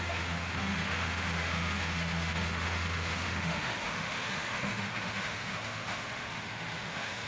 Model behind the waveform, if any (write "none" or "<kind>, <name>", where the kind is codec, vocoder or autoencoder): autoencoder, DAC-VAE